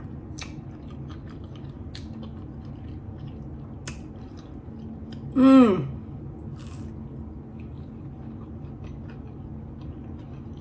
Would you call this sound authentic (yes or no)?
yes